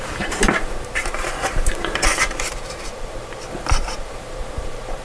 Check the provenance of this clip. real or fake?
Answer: fake